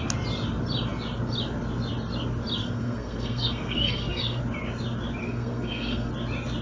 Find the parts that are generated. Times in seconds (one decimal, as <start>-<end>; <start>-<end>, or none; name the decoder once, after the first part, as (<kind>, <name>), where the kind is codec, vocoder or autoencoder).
2.6-4.4 (codec, SNAC); 5.2-6.1